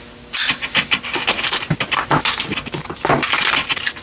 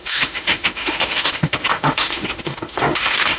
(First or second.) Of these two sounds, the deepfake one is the second